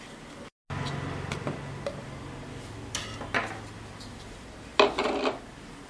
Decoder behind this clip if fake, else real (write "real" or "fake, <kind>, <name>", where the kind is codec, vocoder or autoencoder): real